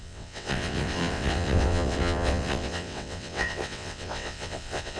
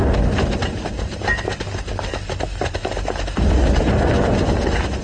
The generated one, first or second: first